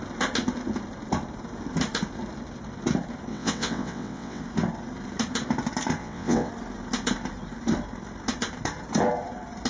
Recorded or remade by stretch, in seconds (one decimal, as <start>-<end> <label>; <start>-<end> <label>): 0.0-3.3 recorded; 3.3-4.4 remade; 4.4-6.0 recorded; 6.0-6.5 remade; 6.5-9.7 recorded

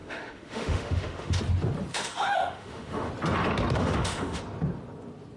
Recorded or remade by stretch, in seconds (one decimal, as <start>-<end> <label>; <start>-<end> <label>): 0.0-1.4 remade; 1.4-1.9 recorded; 1.9-3.1 remade; 3.1-3.8 recorded; 3.8-4.4 remade; 4.4-5.4 recorded